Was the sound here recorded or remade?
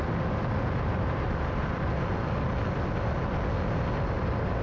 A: recorded